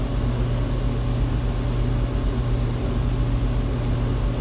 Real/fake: real